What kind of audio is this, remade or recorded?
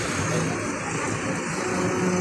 recorded